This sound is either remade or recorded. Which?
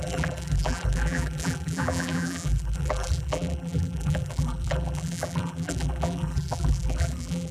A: remade